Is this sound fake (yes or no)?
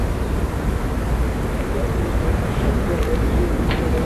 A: no